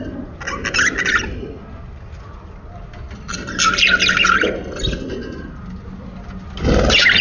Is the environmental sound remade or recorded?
recorded